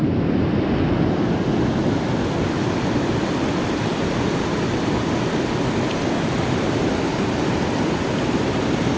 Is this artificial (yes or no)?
no